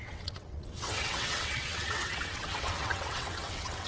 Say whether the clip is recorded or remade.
remade